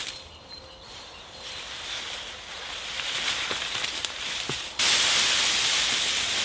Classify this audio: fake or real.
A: fake